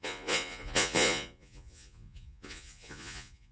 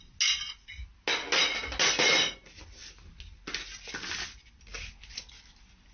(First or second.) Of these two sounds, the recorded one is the second